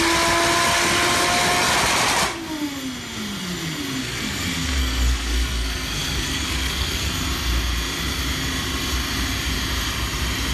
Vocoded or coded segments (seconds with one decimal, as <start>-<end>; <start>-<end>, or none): 4.0-7.1